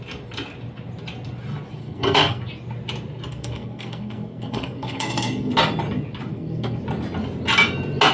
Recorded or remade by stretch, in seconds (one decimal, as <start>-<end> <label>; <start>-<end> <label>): 0.0-1.8 recorded; 1.8-2.4 remade; 2.4-3.3 recorded; 3.3-5.5 remade; 5.5-6.3 recorded; 6.3-6.8 remade; 6.8-8.1 recorded